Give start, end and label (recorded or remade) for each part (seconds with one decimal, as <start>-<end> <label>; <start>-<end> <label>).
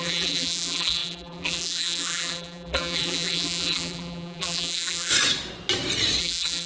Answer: 0.0-5.1 remade; 5.1-6.2 recorded; 6.2-6.7 remade